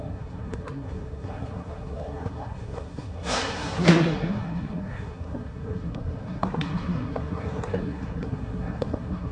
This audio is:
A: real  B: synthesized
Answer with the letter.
B